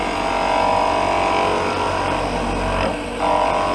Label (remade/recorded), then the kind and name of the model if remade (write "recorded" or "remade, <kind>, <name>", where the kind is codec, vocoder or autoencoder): recorded